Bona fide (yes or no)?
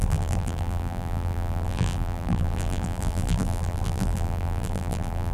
no